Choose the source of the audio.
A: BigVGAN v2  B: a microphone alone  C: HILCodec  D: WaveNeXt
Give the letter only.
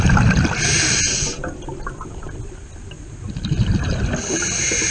B